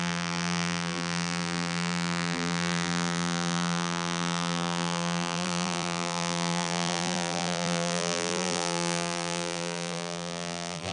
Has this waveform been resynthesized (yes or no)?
yes